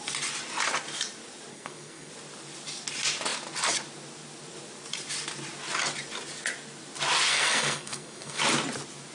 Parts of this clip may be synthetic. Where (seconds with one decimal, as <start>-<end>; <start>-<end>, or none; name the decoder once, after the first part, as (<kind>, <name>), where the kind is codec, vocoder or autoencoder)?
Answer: 1.5-2.1 (codec, SNAC); 7.3-8.4